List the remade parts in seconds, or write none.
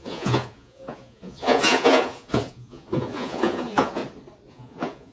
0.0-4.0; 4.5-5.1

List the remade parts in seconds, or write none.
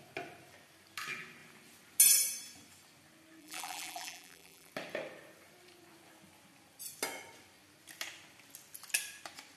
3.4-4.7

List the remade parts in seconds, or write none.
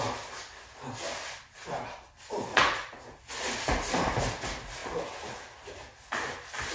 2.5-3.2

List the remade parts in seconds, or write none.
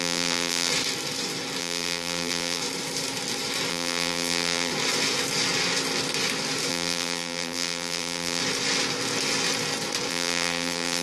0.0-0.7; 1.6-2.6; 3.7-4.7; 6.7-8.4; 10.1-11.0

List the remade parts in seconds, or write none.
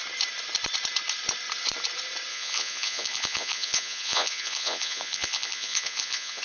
2.3-6.4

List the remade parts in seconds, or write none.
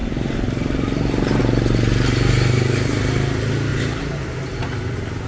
0.0-1.4; 3.7-5.3